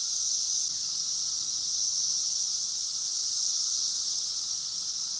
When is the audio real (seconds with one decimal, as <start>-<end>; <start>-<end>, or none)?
0.0-5.2